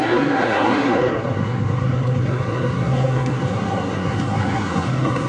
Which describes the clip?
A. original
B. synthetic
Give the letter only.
B